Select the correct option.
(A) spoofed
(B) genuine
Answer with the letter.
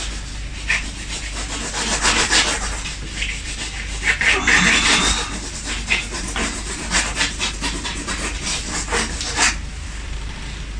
A